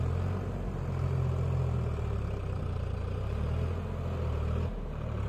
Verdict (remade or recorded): recorded